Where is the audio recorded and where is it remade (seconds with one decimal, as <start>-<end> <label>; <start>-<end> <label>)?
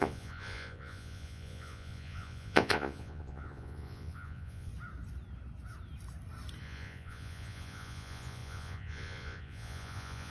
0.0-4.7 remade; 4.7-6.6 recorded; 6.6-10.3 remade